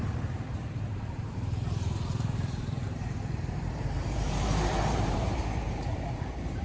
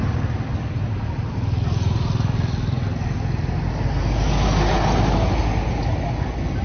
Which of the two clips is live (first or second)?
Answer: second